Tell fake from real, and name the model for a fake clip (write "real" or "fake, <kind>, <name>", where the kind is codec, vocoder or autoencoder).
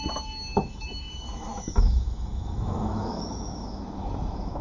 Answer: fake, autoencoder, DAC-VAE